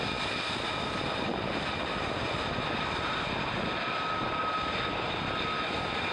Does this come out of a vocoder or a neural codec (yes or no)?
no